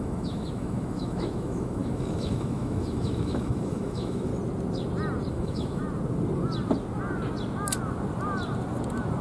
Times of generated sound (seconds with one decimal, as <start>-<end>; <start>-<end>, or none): 0.0-4.3; 5.3-5.8